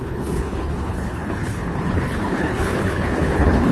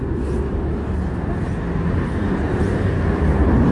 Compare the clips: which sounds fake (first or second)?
first